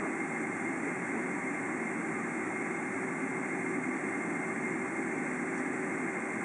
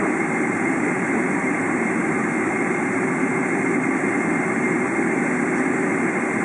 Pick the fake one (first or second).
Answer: second